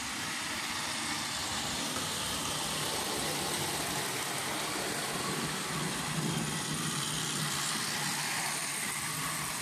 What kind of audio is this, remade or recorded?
recorded